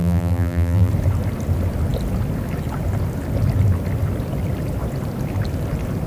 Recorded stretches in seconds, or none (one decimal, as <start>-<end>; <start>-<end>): 0.9-6.1